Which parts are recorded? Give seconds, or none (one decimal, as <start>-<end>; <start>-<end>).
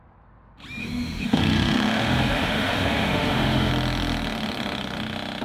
0.0-0.8; 3.7-5.4